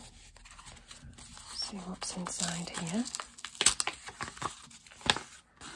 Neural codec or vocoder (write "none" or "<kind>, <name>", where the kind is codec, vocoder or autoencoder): none